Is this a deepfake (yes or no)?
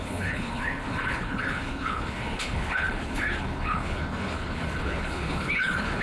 yes